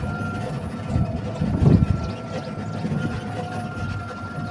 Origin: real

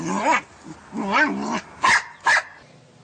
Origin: real